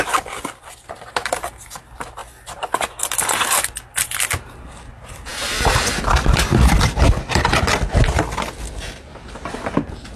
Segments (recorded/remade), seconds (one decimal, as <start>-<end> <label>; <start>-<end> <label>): 0.0-10.2 recorded